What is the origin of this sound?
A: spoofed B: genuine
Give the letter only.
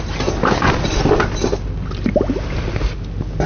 B